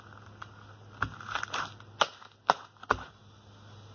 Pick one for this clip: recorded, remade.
recorded